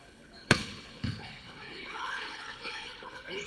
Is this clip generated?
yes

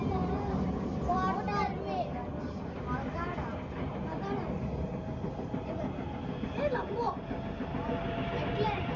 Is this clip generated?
no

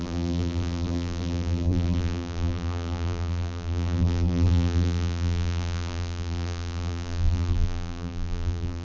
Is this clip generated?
yes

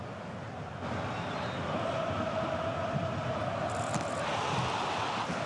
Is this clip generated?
no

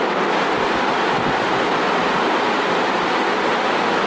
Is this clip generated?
no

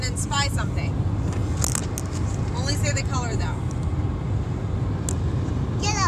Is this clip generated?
no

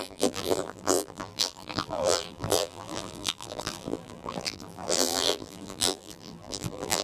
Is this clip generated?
yes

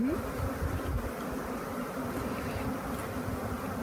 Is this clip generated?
no